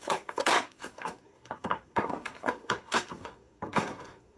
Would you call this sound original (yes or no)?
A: no